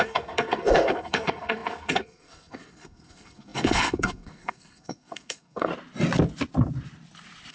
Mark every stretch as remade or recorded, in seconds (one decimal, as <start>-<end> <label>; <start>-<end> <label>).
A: 0.0-5.7 remade; 5.7-7.5 recorded